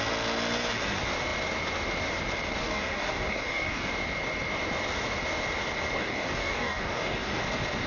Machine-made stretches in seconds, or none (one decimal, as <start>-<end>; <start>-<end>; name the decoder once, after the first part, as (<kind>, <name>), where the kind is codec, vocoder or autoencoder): 2.6-3.9 (codec, DAC); 6.0-7.4